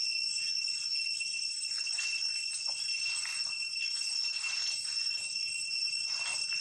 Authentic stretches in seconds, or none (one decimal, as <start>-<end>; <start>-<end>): 0.0-6.6